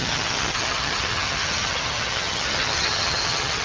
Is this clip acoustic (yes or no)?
no